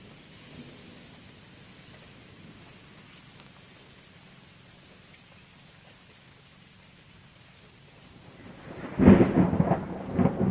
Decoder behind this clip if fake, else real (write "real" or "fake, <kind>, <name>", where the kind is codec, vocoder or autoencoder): real